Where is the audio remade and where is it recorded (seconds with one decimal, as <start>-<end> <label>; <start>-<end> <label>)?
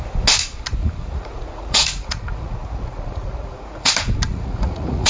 0.0-0.8 recorded; 0.8-3.9 remade; 3.9-4.3 recorded; 4.3-5.1 remade